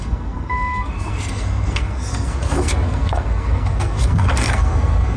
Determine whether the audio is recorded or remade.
remade